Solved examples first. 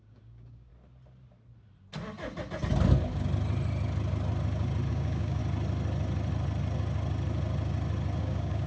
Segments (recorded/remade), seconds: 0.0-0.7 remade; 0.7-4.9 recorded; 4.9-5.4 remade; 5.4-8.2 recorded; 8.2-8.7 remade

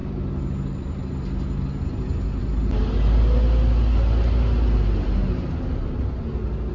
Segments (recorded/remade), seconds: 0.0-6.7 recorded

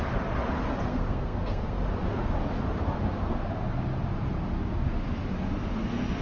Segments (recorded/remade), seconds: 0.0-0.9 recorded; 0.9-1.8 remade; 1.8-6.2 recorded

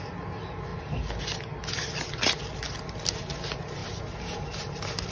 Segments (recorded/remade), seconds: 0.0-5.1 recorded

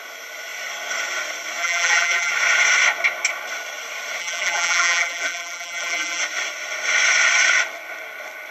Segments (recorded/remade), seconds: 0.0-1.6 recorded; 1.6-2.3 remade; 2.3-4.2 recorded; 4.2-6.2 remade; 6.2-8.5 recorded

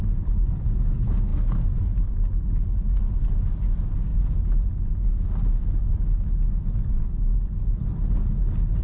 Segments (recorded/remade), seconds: 0.0-8.8 recorded

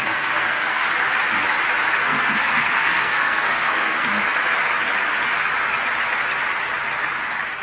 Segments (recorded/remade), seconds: 0.0-0.8 remade; 0.8-2.0 recorded; 2.0-4.1 remade; 4.1-7.6 recorded